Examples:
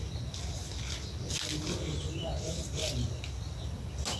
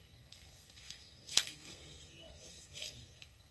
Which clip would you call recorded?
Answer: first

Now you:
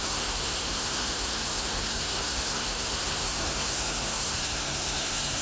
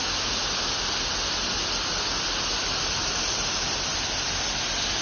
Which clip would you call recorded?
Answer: second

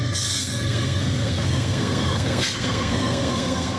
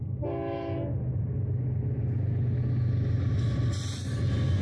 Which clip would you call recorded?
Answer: second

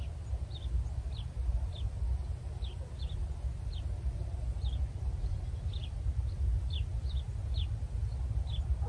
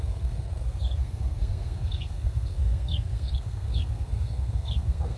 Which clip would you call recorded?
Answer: first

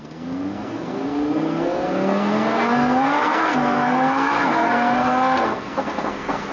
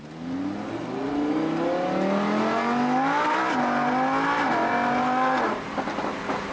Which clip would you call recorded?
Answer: second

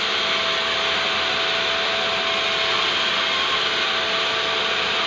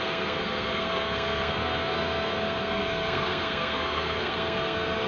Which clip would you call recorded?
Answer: first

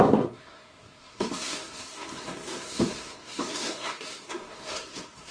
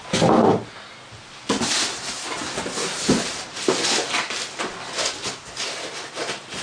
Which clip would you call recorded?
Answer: second